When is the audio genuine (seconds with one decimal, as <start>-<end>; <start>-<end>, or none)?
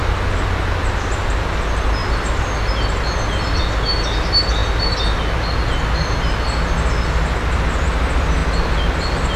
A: 0.0-9.4